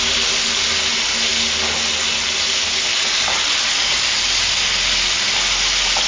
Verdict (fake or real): real